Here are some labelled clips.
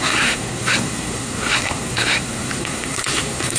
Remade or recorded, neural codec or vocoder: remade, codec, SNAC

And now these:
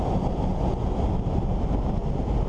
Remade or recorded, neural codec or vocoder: recorded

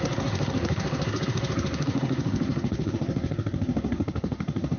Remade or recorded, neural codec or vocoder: remade, codec, SNAC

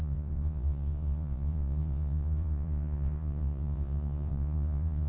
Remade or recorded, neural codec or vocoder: remade, vocoder, Vocos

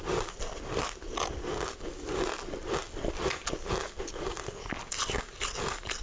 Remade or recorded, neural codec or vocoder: recorded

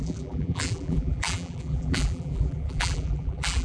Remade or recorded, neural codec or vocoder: remade, vocoder, BigVGAN v2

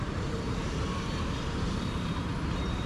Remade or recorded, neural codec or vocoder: remade, vocoder, BigVGAN v2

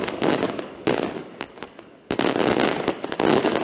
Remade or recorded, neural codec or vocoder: remade, codec, DAC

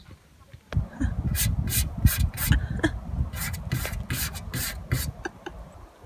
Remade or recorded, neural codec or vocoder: recorded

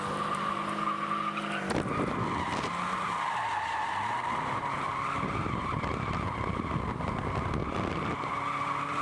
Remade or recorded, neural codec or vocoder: recorded